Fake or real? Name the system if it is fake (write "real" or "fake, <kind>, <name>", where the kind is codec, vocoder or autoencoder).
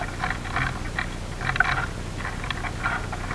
real